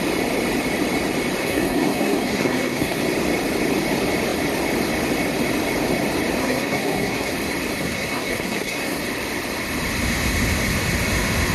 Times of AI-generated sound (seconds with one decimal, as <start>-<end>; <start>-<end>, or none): 1.4-3.0; 6.4-7.3; 7.8-9.0

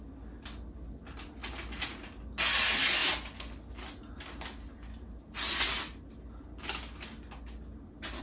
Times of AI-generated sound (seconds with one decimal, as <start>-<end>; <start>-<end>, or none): none

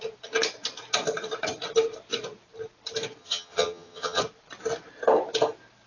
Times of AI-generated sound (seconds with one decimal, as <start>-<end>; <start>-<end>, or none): 3.2-4.2

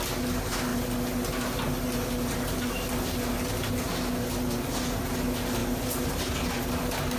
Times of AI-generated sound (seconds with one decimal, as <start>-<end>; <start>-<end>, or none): none

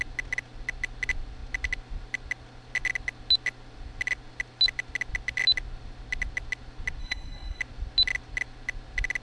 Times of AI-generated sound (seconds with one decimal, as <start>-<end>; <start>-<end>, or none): 7.0-7.6

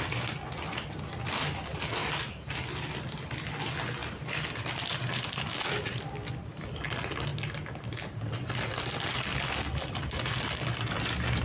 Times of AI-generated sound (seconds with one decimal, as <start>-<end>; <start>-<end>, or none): none